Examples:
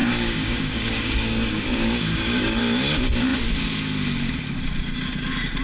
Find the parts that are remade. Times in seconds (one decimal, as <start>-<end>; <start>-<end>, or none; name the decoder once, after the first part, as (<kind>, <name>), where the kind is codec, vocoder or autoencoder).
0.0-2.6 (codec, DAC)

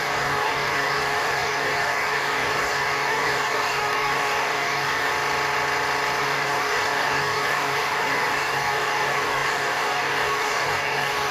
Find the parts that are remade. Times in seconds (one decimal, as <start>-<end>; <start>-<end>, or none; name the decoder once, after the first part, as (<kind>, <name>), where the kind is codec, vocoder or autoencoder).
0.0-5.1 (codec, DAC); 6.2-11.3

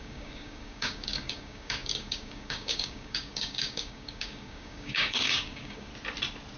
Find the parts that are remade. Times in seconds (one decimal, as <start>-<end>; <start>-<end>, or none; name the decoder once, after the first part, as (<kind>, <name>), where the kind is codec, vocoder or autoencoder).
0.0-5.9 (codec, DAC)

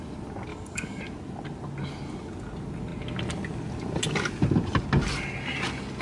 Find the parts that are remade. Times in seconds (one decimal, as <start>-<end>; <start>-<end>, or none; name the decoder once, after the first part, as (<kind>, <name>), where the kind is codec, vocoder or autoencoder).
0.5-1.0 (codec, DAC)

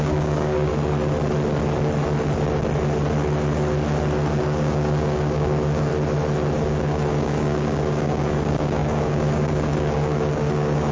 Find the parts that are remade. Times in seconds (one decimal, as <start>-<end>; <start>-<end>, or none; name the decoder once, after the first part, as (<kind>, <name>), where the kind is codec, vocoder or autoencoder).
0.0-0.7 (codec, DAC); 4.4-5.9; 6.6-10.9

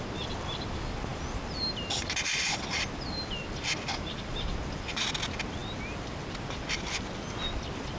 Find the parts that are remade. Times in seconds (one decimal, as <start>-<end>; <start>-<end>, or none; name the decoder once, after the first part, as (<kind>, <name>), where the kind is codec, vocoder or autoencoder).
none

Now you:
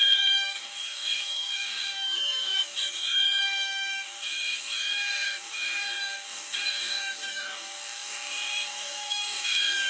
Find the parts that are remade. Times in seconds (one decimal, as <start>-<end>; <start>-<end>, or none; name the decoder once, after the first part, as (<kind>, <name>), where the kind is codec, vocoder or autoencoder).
0.0-9.9 (codec, DAC)

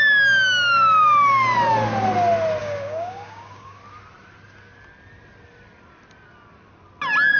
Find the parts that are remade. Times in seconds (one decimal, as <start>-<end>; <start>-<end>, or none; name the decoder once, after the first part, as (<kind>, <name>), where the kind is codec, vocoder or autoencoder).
2.6-3.8 (codec, DAC)